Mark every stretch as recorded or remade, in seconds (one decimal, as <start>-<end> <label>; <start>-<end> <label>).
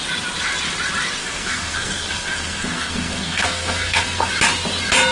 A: 0.0-1.2 recorded; 1.2-4.3 remade; 4.3-5.1 recorded